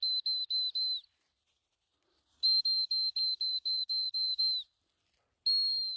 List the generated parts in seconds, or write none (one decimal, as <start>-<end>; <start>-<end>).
2.3-4.4